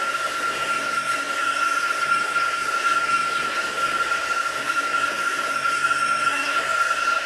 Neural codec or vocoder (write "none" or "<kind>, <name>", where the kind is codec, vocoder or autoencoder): codec, SNAC